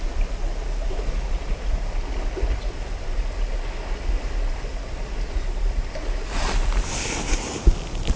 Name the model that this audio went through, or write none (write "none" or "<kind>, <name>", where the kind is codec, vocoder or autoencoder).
none